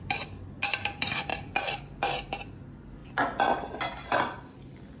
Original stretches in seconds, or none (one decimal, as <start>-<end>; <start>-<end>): 0.0-5.0